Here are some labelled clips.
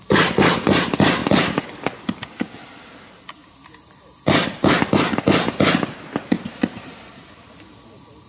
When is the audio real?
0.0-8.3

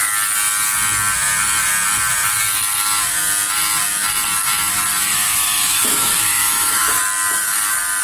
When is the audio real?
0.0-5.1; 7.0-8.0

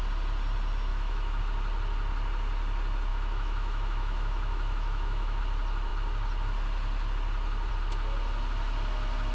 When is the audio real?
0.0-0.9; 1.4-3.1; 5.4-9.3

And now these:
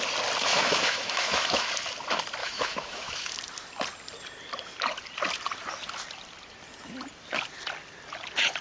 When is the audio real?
0.0-0.5; 1.7-2.4; 3.3-8.6

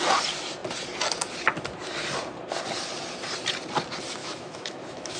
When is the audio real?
0.0-4.2

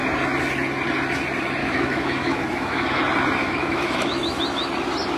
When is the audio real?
0.0-1.6; 3.0-3.4; 4.7-5.2

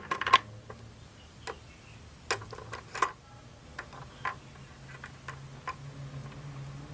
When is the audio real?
0.0-6.9

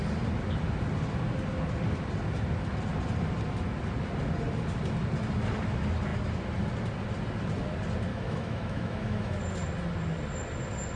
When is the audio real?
0.0-8.1; 9.4-11.0